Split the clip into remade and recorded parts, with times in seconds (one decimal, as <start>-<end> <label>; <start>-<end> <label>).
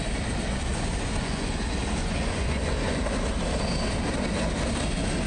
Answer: 0.0-0.7 recorded; 0.7-1.6 remade; 1.6-2.0 recorded; 2.0-3.0 remade; 3.0-5.3 recorded